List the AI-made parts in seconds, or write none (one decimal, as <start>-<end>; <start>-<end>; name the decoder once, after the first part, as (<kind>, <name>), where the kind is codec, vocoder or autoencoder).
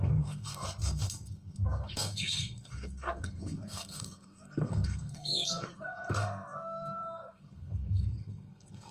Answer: 0.0-8.9 (codec, SNAC)